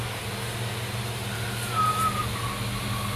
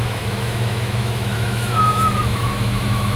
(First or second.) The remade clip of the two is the second